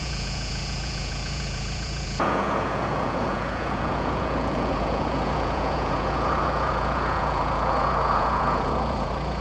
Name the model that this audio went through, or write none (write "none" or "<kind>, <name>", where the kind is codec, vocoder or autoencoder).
vocoder, Vocos